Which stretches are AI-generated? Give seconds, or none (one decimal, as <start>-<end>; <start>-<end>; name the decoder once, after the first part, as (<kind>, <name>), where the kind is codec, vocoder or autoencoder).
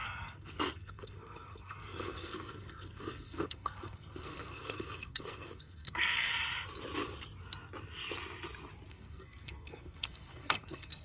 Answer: 0.0-6.3 (codec, SNAC); 8.9-11.0